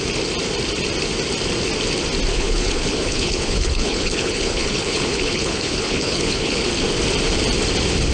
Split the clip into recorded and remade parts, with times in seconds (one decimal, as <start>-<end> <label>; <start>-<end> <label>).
0.0-2.3 recorded; 2.3-6.7 remade; 6.7-8.1 recorded